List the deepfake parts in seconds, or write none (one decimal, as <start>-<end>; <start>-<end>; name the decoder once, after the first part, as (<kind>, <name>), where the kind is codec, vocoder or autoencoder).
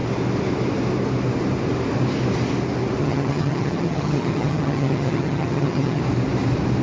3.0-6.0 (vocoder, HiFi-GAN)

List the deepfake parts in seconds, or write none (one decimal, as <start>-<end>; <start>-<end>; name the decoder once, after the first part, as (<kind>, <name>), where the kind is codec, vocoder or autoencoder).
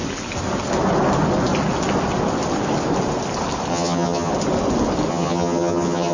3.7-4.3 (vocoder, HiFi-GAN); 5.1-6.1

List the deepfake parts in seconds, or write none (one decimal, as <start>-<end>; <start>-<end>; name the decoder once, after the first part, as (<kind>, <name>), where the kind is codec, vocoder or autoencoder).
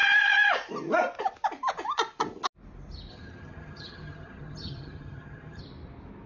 3.1-5.6 (vocoder, HiFi-GAN)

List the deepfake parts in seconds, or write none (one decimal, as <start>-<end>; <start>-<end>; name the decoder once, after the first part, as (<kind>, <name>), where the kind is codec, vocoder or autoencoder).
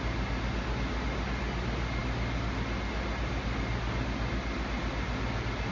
none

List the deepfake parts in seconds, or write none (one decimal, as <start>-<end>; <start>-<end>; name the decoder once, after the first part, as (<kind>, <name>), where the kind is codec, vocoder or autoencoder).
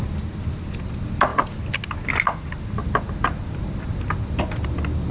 none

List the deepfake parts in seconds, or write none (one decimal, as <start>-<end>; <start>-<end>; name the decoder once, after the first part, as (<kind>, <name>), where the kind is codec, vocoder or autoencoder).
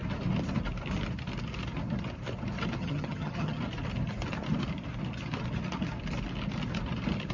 2.8-3.6 (vocoder, HiFi-GAN)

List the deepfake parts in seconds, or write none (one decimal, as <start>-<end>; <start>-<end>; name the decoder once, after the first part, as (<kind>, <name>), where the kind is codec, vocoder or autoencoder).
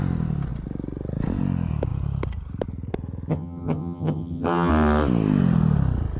3.3-4.7 (vocoder, HiFi-GAN)